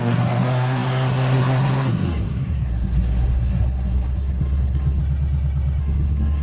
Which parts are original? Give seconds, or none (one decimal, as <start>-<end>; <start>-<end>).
5.0-5.8